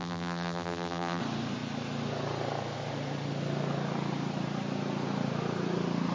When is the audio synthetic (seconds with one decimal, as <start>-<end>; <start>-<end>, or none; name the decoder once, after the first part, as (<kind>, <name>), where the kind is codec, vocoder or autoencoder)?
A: 0.0-1.2 (vocoder, BigVGAN v2)